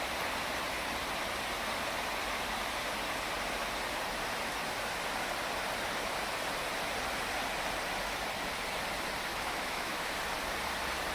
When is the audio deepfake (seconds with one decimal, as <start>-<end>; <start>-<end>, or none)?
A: 9.3-10.1